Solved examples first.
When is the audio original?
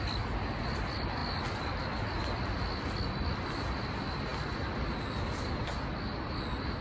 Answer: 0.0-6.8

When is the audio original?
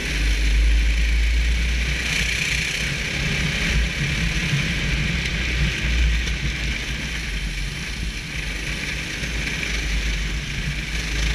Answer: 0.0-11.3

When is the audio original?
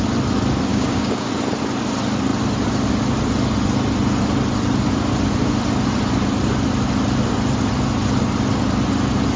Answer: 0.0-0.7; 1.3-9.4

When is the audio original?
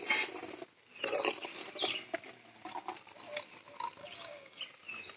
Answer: 0.0-4.0; 4.6-5.2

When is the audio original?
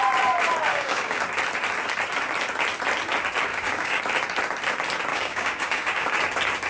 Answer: 0.0-0.7; 1.2-3.5; 4.0-5.1; 6.2-6.7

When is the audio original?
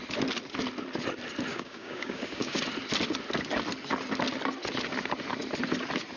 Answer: 0.0-1.5; 2.6-6.2